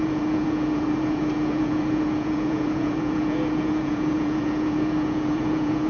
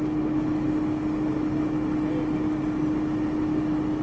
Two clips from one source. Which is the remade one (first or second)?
first